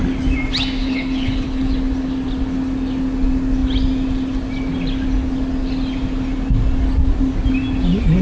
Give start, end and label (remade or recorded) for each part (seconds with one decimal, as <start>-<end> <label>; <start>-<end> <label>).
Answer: 0.0-0.8 recorded; 0.8-1.7 remade; 1.7-8.2 recorded